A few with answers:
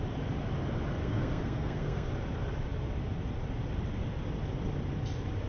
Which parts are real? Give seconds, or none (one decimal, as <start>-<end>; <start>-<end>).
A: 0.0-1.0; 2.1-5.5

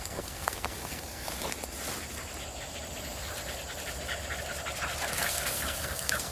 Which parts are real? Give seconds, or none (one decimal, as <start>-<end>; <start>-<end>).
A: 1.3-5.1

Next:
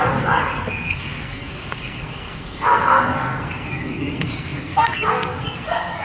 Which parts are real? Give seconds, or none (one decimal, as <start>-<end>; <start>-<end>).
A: none

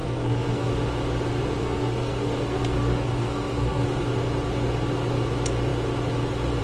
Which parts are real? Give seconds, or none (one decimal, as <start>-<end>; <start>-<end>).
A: 0.7-1.6; 4.0-6.6

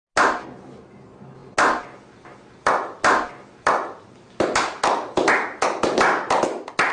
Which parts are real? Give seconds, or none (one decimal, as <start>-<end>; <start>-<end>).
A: 0.0-6.9

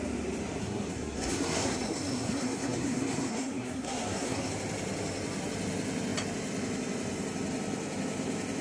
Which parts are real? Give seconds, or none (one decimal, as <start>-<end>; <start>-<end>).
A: 0.0-0.6; 4.5-8.6

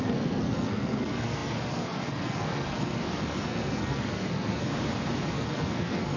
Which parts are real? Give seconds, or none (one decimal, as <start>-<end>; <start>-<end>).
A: 4.7-5.3

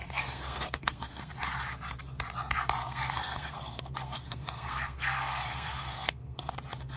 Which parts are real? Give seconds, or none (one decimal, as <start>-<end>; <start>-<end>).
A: 1.3-2.8; 6.5-7.0